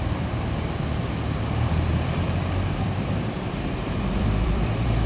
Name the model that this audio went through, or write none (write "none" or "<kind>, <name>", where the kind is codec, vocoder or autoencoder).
vocoder, BigVGAN v2